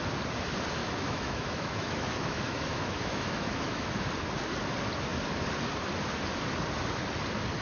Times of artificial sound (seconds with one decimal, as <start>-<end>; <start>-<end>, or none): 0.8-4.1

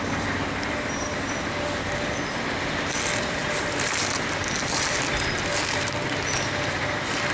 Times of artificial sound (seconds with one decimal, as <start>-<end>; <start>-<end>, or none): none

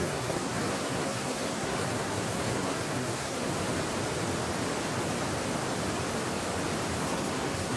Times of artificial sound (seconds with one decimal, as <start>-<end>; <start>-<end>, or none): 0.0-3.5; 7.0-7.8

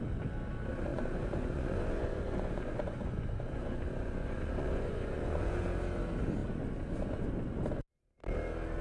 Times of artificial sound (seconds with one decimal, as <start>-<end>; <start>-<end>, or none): 0.9-5.6

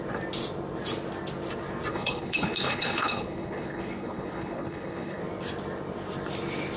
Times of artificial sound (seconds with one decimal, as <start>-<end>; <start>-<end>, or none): 1.9-5.2

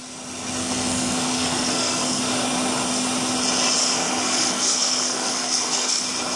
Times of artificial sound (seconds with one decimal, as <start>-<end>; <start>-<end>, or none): 0.6-2.2; 3.8-6.0